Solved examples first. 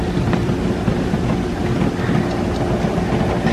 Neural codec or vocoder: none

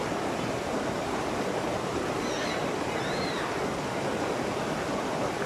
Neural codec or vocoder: none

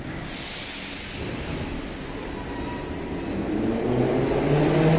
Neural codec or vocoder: none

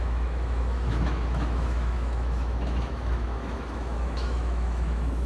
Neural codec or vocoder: autoencoder, DAC-VAE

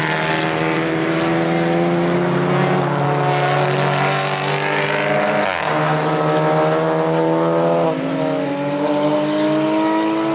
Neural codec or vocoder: none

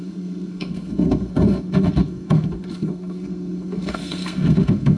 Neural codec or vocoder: codec, SNAC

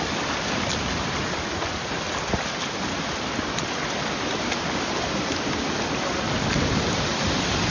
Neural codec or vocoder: none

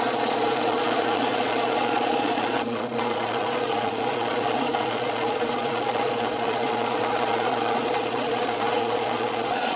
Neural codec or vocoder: vocoder, Vocos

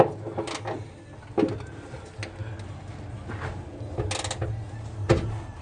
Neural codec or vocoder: none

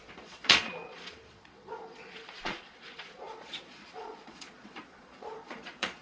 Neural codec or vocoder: vocoder, Vocos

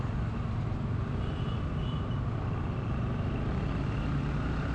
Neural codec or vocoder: none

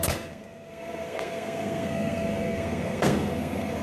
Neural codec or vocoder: codec, SNAC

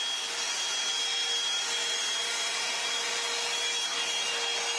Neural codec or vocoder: none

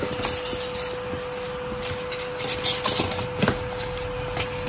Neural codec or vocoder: none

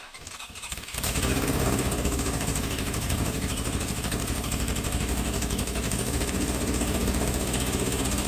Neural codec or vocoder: codec, DAC